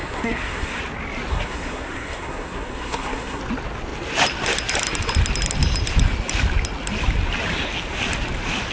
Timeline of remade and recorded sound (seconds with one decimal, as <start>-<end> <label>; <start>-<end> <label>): 0.0-0.8 remade; 0.8-1.3 recorded; 1.3-3.4 remade; 3.4-8.7 recorded